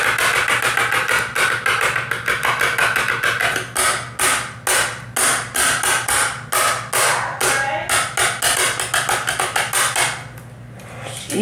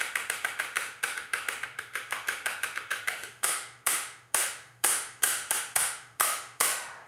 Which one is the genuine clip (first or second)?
first